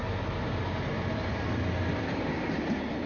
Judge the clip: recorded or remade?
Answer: recorded